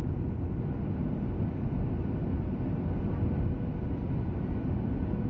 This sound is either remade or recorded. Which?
recorded